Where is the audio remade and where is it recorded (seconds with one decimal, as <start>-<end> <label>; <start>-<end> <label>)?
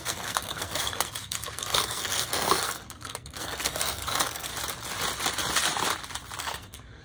0.0-4.5 remade; 4.5-6.4 recorded; 6.4-7.0 remade